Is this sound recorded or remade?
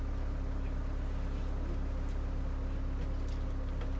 recorded